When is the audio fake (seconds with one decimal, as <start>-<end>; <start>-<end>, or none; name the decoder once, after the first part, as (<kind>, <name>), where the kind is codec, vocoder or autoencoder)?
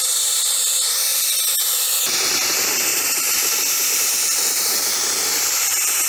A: 2.9-3.7 (vocoder, BigVGAN v2)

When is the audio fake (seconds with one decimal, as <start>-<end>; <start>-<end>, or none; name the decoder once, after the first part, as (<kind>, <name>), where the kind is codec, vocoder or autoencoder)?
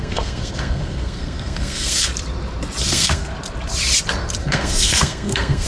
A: 0.0-2.1 (codec, SNAC); 2.8-3.3; 4.4-5.7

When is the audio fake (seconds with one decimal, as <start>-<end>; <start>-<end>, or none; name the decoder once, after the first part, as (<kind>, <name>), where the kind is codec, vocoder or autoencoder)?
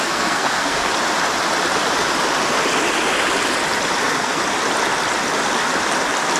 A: 0.0-0.9 (codec, SNAC); 4.0-4.4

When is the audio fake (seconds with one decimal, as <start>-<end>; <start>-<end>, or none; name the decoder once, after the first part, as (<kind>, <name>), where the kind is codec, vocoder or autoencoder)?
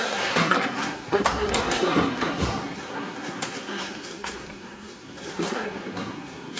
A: 0.0-6.6 (codec, SNAC)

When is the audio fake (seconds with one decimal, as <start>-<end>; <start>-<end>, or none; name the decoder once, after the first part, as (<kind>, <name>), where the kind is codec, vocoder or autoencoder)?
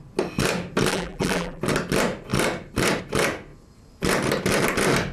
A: 0.9-1.6 (vocoder, BigVGAN v2)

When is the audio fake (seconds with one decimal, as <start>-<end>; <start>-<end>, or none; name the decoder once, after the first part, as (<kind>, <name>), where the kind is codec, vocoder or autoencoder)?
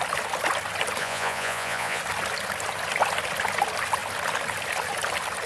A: 1.0-2.0 (vocoder, Vocos)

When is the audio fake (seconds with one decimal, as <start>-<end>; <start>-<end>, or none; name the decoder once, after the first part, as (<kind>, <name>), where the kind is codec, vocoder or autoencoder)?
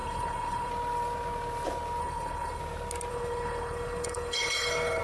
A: 0.0-0.7 (codec, HILCodec); 2.0-2.6; 3.1-5.0